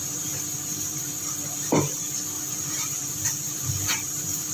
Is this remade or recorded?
remade